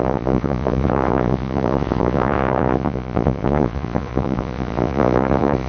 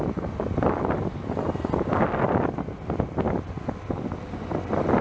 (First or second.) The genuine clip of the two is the second